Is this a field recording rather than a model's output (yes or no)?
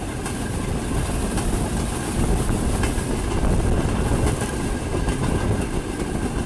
yes